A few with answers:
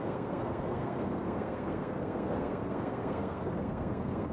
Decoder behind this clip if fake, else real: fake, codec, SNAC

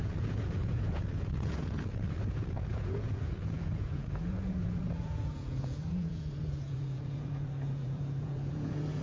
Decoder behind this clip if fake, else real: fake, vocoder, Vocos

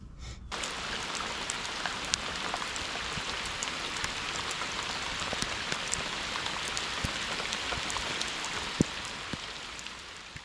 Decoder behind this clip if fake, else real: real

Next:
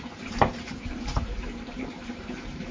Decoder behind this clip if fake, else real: fake, vocoder, BigVGAN v2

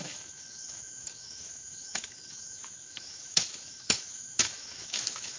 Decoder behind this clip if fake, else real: fake, autoencoder, DAC-VAE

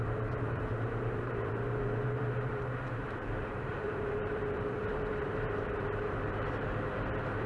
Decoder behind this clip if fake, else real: fake, vocoder, BigVGAN v2